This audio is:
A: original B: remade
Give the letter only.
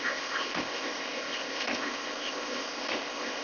B